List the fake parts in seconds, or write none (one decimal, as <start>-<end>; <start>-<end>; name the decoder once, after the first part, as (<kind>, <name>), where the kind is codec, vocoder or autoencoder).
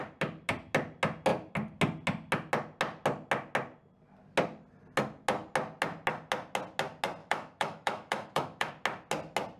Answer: 7.2-8.7 (autoencoder, DAC-VAE)